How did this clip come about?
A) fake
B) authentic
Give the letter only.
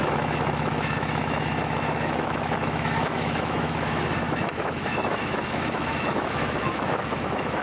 A